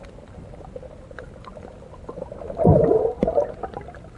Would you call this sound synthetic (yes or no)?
no